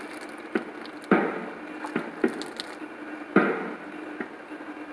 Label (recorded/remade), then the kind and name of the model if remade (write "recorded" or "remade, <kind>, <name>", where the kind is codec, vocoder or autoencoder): recorded